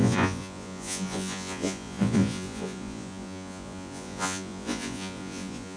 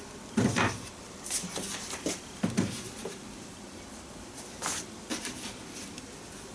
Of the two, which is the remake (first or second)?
first